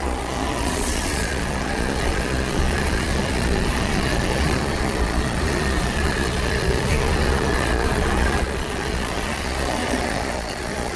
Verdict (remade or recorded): remade